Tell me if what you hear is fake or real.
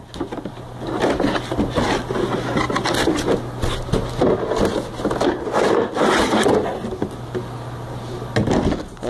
real